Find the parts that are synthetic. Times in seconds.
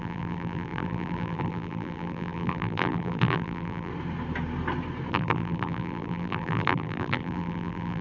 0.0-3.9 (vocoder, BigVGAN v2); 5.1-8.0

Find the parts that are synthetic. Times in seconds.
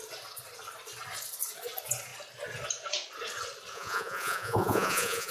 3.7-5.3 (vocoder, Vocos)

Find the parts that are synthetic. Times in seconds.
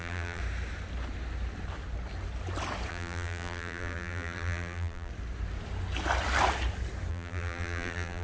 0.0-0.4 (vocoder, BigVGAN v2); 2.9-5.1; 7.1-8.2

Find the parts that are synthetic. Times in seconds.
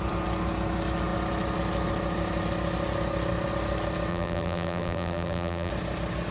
4.1-5.7 (vocoder, BigVGAN v2)